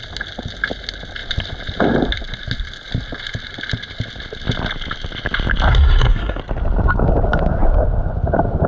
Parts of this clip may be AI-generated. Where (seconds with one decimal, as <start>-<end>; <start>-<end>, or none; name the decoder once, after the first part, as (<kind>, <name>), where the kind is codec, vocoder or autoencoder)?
5.7-6.4 (codec, SNAC)